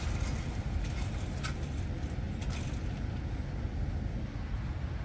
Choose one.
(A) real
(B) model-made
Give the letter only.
A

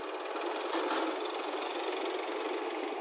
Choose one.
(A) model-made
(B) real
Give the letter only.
B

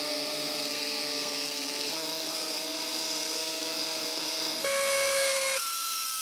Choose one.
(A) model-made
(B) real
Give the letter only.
A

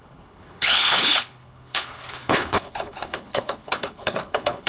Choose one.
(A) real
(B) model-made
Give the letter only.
B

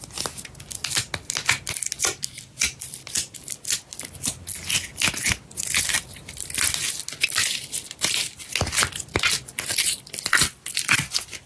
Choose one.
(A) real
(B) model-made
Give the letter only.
A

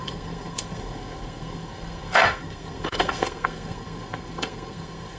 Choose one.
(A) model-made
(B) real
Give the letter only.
A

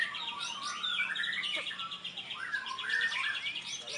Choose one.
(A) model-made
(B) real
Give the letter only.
A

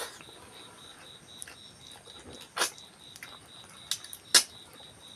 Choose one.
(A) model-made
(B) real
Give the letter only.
B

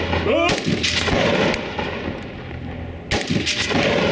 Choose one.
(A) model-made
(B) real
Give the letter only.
B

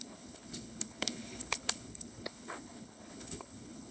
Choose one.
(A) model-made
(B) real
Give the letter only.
A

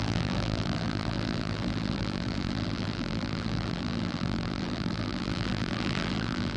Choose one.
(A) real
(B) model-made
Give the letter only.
B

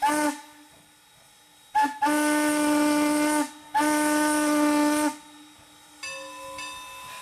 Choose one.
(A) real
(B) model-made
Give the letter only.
A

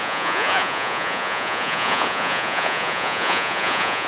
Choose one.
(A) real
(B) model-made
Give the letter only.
B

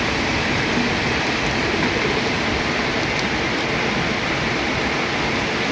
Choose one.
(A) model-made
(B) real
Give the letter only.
B